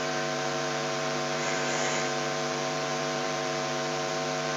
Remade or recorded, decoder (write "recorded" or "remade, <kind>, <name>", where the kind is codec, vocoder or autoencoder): remade, vocoder, BigVGAN v2